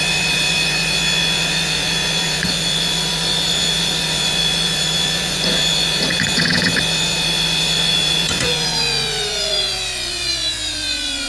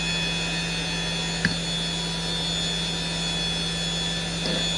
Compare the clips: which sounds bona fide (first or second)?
second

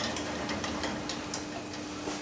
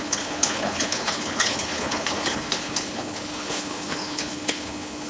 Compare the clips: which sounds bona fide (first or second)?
first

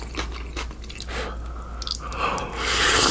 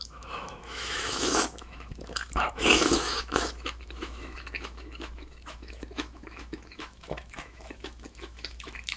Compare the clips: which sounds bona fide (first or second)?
first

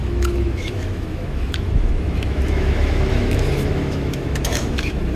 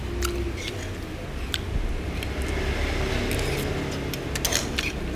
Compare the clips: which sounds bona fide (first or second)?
second